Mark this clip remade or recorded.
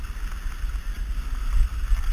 recorded